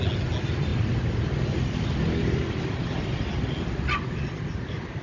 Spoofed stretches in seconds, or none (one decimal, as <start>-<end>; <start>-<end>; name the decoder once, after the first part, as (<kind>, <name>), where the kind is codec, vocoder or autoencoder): none